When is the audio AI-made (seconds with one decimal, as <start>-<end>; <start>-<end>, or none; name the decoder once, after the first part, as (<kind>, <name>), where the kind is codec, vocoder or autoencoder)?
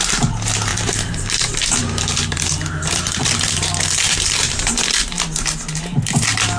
0.7-4.7 (vocoder, BigVGAN v2)